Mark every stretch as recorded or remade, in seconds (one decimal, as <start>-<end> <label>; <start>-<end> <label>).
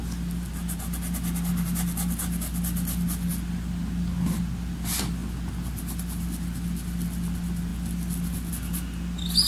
0.0-9.5 recorded